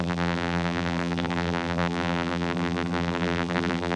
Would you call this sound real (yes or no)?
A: no